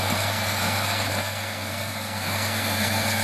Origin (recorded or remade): remade